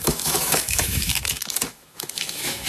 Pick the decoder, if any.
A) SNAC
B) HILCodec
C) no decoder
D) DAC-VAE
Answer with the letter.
D